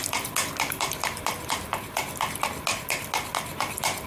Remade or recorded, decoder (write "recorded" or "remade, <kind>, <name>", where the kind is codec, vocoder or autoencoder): recorded